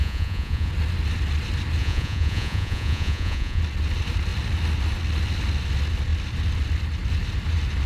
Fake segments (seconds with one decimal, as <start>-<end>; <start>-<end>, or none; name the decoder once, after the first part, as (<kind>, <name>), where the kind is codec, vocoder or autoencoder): 0.0-0.7 (vocoder, Vocos); 1.8-3.6